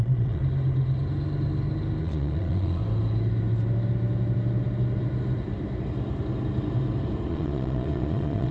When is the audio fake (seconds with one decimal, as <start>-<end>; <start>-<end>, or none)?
0.0-0.4; 2.0-2.8; 7.3-8.5